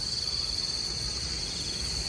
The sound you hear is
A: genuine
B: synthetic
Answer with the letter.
A